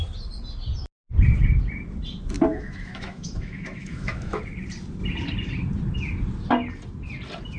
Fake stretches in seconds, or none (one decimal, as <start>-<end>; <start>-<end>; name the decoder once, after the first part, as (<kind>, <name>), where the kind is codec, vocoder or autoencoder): 2.5-4.4 (autoencoder, DAC-VAE)